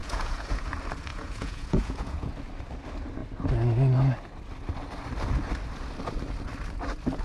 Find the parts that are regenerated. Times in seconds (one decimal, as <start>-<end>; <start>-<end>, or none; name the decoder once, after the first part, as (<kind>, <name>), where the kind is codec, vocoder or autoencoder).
0.0-0.7 (vocoder, Vocos); 1.1-2.3